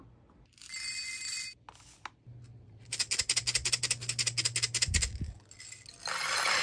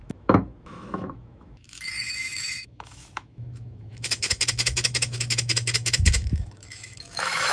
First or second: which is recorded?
first